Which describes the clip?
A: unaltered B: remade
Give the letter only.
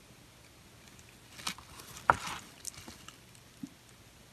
A